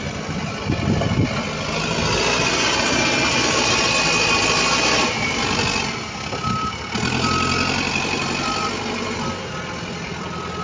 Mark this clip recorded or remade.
recorded